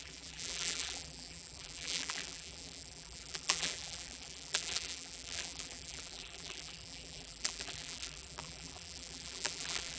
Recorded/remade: remade